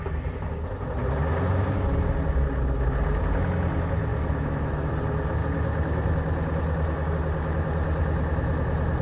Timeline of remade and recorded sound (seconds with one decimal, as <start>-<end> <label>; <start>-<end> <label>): 0.0-4.1 recorded; 4.1-4.9 remade; 4.9-9.0 recorded